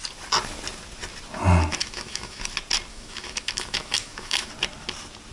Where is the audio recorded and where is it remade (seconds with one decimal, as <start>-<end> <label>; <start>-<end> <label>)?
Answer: 0.0-1.8 recorded; 1.8-2.5 remade; 2.5-2.9 recorded; 2.9-4.5 remade; 4.5-5.3 recorded